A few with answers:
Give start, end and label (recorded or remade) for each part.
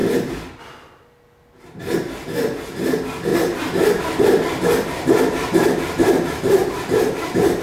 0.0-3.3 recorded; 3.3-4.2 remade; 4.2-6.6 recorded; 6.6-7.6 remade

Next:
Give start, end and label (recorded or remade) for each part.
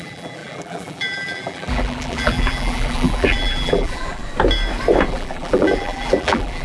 0.0-4.2 remade; 4.2-5.1 recorded; 5.1-6.6 remade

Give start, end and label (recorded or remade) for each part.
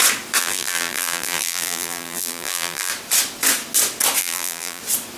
0.0-0.4 recorded; 0.4-2.9 remade; 2.9-4.2 recorded; 4.2-4.8 remade; 4.8-5.2 recorded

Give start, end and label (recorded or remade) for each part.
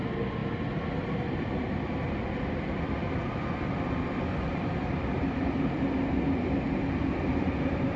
0.0-8.0 recorded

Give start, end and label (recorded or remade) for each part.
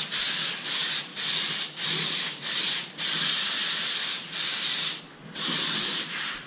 0.0-1.1 recorded; 1.1-5.0 remade; 5.0-5.9 recorded; 5.9-6.5 remade